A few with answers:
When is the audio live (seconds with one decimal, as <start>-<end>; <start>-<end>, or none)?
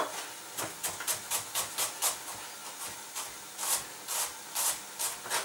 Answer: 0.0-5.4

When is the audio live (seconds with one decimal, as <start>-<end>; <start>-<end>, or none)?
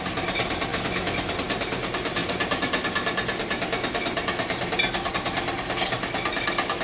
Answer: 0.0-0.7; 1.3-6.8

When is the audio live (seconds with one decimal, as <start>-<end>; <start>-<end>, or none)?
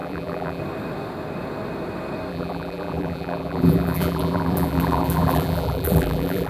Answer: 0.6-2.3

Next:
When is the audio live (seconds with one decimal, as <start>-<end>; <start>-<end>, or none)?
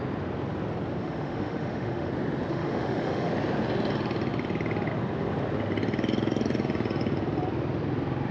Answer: 0.0-1.0; 2.1-2.5; 3.3-8.3